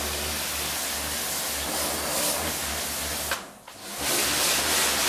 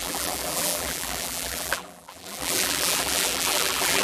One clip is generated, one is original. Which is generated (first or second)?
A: second